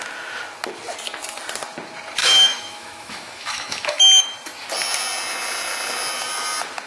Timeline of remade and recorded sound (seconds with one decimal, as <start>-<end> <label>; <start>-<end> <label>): 0.0-2.2 recorded; 2.2-4.0 remade; 4.0-6.9 recorded